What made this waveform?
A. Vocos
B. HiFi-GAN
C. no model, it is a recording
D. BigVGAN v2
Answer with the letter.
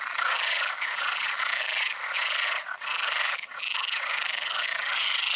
D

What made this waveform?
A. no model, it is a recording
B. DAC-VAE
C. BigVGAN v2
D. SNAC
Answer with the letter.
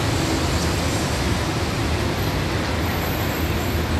A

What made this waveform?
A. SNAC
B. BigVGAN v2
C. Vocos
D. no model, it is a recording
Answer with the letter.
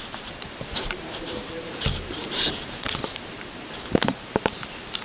B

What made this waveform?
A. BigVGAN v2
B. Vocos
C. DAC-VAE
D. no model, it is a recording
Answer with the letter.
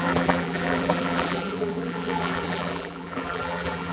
A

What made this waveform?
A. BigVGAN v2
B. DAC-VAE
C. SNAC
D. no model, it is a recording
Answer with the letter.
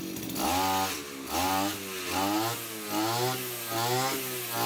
D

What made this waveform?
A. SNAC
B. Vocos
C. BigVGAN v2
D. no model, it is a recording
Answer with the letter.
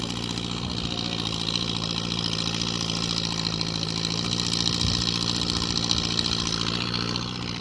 D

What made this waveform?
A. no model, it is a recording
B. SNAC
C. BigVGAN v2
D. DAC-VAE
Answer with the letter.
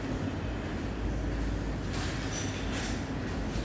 A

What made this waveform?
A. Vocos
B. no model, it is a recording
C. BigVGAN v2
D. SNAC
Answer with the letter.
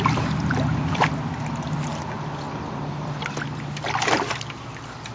C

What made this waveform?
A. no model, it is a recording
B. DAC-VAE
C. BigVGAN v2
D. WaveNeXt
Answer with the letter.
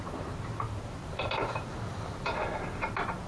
C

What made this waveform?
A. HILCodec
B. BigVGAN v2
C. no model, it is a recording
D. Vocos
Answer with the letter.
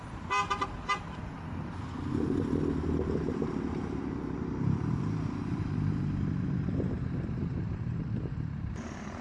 B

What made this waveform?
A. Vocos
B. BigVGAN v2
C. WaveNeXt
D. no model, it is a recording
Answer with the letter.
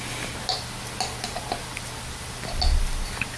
D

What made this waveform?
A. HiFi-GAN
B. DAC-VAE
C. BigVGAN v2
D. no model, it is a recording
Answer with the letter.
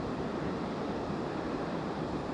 C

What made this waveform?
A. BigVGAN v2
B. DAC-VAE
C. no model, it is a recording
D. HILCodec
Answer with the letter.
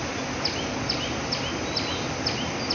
C